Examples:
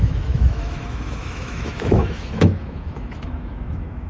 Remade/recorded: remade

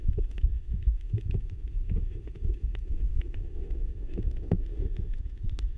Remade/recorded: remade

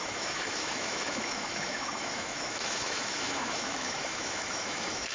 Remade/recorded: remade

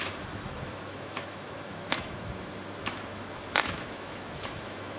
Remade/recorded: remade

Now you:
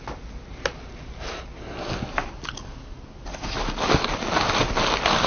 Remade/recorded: recorded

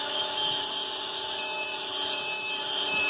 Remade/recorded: remade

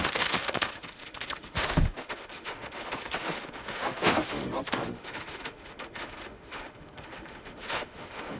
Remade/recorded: remade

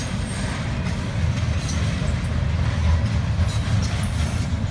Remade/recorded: recorded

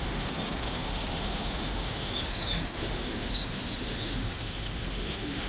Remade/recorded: remade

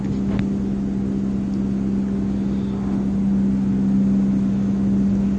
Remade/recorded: recorded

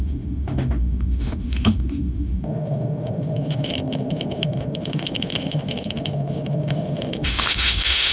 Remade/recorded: remade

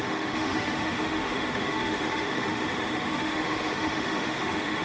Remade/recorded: remade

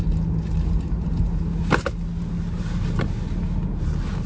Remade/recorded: recorded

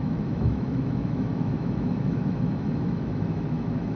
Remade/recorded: remade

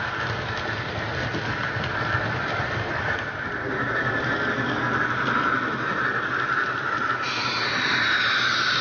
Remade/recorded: recorded